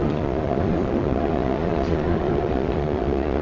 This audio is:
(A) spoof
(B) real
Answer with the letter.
A